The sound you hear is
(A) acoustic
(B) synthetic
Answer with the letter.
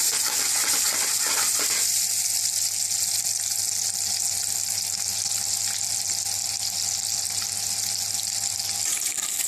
A